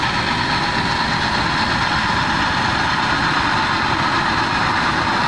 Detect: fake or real real